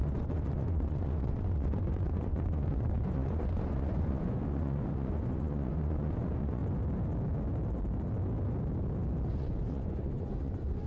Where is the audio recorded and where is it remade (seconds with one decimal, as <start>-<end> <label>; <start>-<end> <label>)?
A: 0.0-6.6 remade; 6.6-9.3 recorded; 9.3-10.9 remade